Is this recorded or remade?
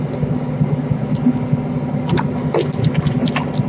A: recorded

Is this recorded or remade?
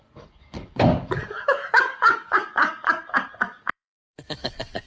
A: remade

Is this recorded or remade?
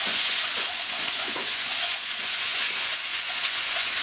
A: remade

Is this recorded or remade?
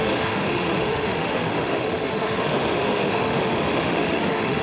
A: remade